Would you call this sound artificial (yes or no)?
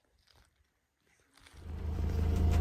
no